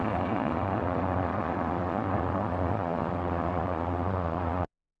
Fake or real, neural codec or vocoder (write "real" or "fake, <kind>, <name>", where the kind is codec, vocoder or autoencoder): fake, vocoder, Vocos